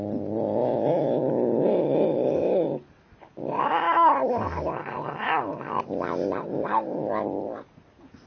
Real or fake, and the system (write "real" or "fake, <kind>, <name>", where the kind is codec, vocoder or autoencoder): real